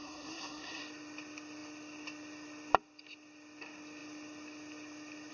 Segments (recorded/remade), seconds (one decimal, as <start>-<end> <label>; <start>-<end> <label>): 0.0-0.8 remade; 0.8-5.3 recorded

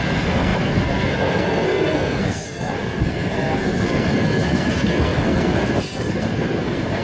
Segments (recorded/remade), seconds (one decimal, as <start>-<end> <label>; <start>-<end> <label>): 0.0-7.0 remade

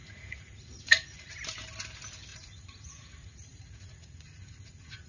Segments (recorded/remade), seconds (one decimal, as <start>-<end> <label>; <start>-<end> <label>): 0.0-1.3 remade; 1.3-2.3 recorded; 2.3-5.1 remade

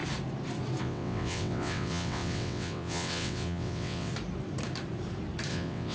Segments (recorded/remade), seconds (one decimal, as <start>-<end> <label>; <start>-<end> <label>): 0.0-0.8 recorded; 0.8-4.1 remade; 4.1-5.5 recorded; 5.5-5.9 remade